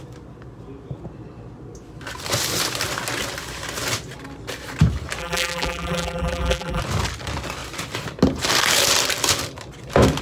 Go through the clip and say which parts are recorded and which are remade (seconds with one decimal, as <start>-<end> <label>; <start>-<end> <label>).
0.0-5.2 recorded; 5.2-6.8 remade; 6.8-10.2 recorded